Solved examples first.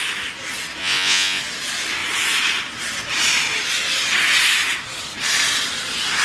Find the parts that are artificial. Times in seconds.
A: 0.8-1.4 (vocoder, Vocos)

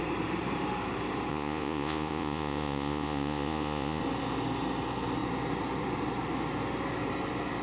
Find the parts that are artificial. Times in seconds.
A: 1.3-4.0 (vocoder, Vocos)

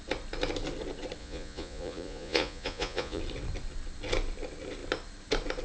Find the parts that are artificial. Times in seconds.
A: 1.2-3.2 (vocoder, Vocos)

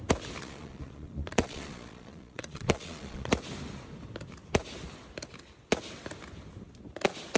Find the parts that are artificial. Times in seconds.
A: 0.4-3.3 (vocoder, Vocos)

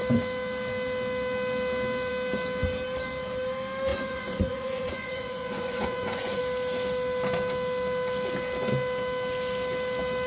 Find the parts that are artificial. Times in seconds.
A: 3.9-6.4 (vocoder, Vocos)